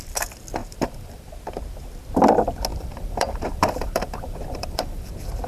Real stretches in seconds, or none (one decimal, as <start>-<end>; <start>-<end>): 0.0-0.6; 1.3-2.7; 5.1-5.5